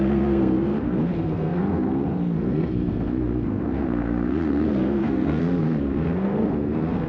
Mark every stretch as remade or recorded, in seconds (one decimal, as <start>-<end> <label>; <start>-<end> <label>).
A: 0.0-7.1 remade